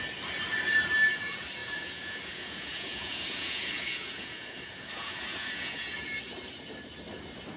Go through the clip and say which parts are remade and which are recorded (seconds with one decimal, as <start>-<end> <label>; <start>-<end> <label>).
0.0-1.6 recorded; 1.6-6.2 remade; 6.2-7.6 recorded